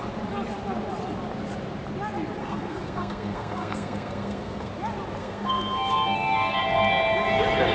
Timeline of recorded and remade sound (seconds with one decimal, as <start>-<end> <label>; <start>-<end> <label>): 0.0-2.4 recorded; 2.4-4.7 remade; 4.7-5.2 recorded; 5.2-6.6 remade; 6.6-7.7 recorded